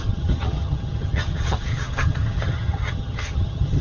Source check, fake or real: fake